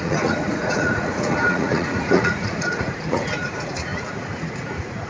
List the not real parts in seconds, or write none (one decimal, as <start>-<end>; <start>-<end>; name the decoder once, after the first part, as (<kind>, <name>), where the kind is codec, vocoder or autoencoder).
0.0-5.1 (vocoder, Vocos)